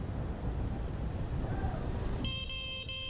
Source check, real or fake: real